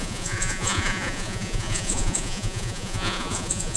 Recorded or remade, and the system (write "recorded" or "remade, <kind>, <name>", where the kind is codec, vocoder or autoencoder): remade, vocoder, Vocos